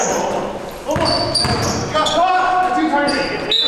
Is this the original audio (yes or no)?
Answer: yes